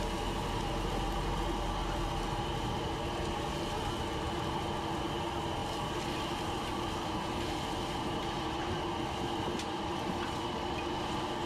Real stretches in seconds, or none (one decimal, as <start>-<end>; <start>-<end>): 0.0-11.5